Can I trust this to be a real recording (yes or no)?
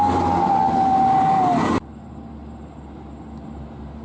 yes